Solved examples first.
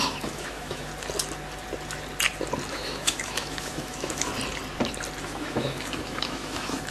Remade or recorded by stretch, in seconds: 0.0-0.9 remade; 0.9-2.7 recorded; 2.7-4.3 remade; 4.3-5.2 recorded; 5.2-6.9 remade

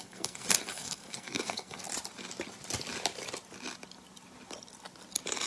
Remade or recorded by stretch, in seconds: 0.0-1.9 remade; 1.9-5.5 recorded

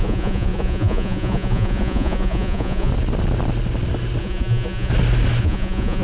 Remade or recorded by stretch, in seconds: 0.0-2.9 remade; 2.9-4.2 recorded; 4.2-4.9 remade; 4.9-5.4 recorded; 5.4-6.0 remade